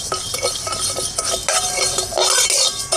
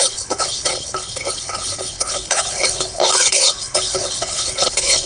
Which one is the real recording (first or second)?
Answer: first